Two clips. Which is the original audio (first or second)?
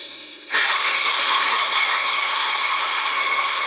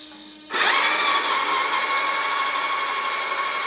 second